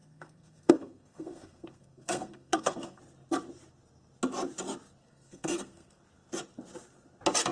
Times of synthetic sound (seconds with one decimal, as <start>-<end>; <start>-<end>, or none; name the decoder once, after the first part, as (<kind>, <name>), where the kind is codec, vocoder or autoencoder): 0.0-3.0 (codec, SNAC); 5.0-6.0